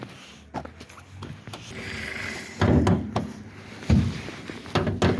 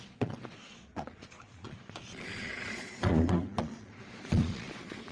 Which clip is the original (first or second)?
first